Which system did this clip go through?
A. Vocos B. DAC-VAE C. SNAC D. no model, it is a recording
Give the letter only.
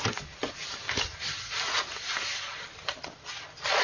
D